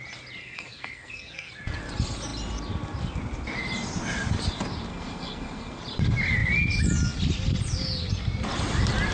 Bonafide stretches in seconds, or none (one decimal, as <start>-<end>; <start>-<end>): 0.0-0.4; 1.5-4.9; 5.8-9.1